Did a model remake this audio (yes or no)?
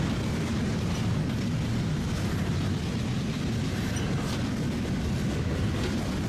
no